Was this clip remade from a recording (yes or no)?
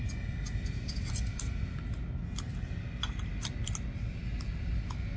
no